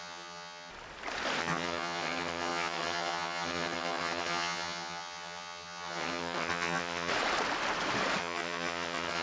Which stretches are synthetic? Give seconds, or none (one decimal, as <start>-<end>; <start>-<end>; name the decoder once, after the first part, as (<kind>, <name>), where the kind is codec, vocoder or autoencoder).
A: 0.0-0.7 (vocoder, HiFi-GAN); 1.4-7.1; 8.2-9.2